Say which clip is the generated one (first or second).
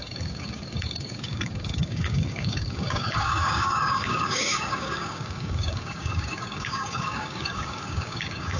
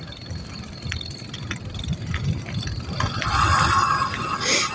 first